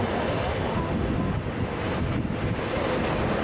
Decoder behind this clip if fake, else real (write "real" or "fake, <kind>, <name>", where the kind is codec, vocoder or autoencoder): real